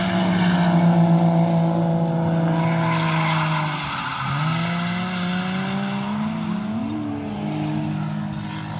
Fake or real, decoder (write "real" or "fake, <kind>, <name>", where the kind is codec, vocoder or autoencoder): real